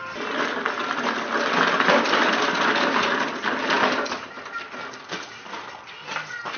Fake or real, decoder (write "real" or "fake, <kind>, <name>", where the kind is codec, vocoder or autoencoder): real